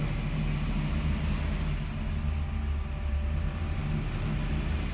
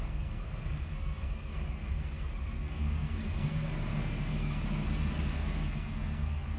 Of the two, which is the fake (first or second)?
second